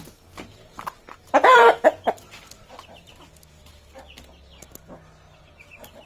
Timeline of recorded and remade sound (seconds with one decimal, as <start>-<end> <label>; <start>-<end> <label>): 0.0-1.4 recorded; 1.4-2.0 remade; 2.0-6.1 recorded